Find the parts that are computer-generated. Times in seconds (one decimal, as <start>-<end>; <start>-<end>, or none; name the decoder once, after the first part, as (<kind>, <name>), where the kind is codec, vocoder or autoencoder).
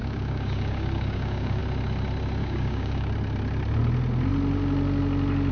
0.0-1.6 (codec, DAC); 2.4-3.1